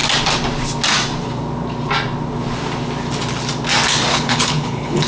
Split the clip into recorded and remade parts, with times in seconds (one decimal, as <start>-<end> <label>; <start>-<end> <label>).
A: 0.0-4.1 recorded; 4.1-5.1 remade